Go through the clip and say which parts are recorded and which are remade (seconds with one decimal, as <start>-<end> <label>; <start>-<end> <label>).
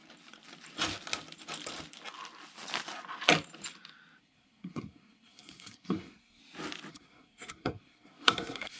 0.0-4.2 recorded; 4.2-6.4 remade; 6.4-6.9 recorded; 6.9-8.8 remade